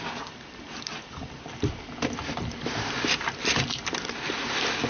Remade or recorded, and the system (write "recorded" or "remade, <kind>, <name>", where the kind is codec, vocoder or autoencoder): recorded